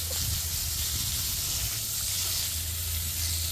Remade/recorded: recorded